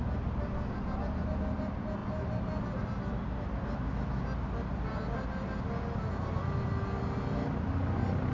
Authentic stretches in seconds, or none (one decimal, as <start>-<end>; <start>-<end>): 0.0-8.3